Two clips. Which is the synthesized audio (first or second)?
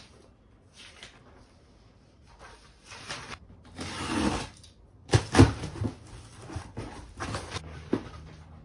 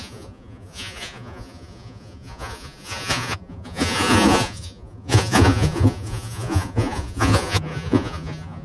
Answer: second